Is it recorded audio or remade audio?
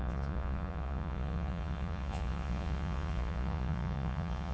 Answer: remade